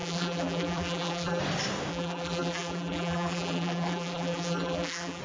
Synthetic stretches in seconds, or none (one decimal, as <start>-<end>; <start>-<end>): 0.0-1.4; 1.9-5.2